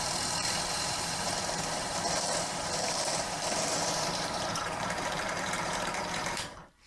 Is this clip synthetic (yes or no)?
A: yes